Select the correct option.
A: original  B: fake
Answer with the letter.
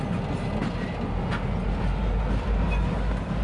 A